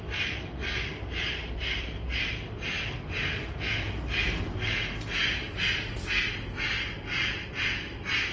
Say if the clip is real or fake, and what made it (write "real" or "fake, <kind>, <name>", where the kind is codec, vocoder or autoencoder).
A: real